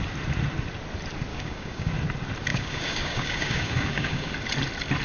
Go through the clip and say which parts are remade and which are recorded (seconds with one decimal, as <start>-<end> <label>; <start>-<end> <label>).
0.0-1.3 recorded; 1.3-1.9 remade; 1.9-2.5 recorded; 2.5-4.3 remade; 4.3-5.0 recorded